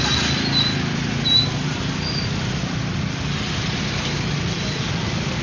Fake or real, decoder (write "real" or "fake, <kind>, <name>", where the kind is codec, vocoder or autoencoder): real